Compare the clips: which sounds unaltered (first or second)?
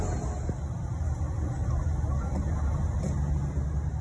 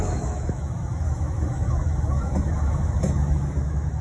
first